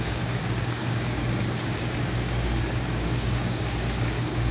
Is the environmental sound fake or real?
fake